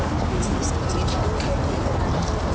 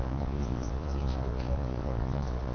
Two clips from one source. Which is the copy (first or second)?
second